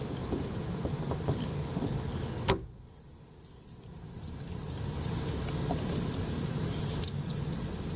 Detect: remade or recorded recorded